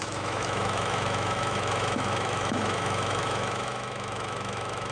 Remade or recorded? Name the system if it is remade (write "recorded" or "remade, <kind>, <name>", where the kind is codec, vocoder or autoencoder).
remade, autoencoder, DAC-VAE